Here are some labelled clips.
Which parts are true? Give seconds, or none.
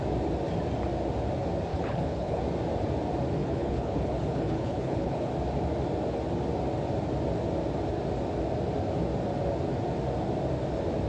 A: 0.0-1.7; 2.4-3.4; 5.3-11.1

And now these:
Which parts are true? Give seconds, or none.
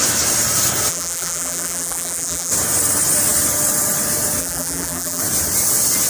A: 0.0-0.9; 2.5-4.4; 5.2-6.1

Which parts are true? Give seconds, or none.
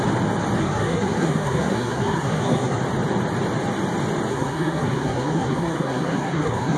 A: 0.0-0.6; 2.8-4.3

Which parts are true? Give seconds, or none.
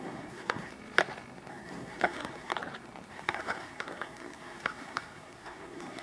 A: 0.7-1.5; 2.5-3.1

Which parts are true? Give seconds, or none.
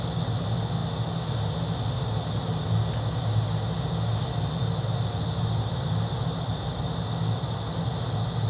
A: 0.0-8.5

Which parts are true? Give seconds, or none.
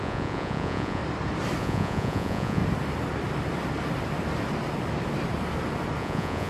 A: 1.0-1.6; 2.6-6.0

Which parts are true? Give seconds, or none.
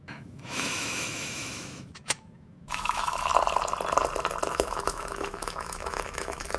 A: 3.3-4.5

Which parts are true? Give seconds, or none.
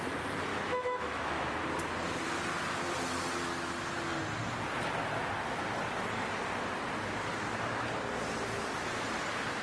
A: 0.0-0.5; 1.6-9.6